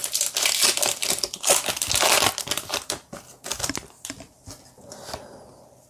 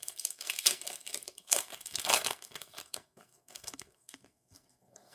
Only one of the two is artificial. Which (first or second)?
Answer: second